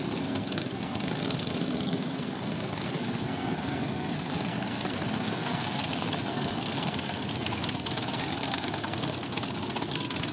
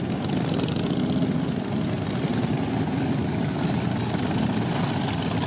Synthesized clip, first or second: first